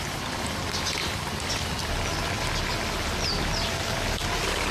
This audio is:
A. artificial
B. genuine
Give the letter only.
B